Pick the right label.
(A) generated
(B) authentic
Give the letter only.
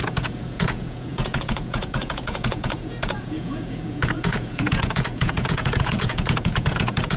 A